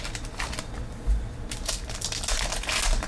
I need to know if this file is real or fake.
real